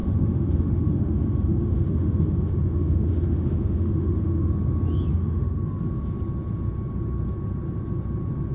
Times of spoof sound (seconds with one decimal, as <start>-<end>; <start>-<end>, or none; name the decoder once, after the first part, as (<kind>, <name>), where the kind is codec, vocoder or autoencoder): 0.0-4.5 (autoencoder, DAC-VAE); 5.1-5.6